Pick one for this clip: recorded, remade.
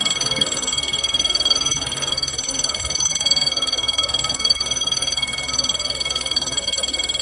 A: remade